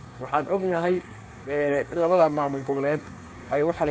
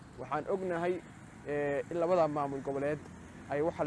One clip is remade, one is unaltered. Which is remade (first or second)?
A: first